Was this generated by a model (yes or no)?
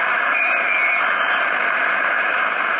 yes